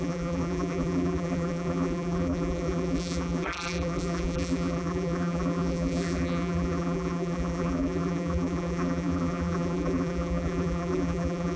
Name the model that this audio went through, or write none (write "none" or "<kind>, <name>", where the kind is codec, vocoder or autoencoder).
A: vocoder, BigVGAN v2